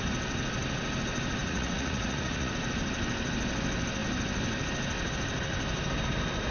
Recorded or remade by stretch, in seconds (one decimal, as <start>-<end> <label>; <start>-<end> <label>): 0.0-1.4 recorded; 1.4-2.5 remade; 2.5-6.5 recorded